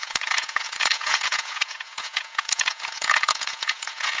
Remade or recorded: remade